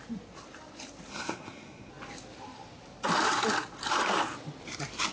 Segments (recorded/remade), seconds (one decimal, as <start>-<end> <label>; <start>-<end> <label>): 0.0-1.1 recorded; 1.1-1.9 remade; 1.9-5.1 recorded